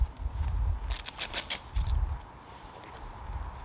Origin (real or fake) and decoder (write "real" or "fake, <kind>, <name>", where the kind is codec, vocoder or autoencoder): real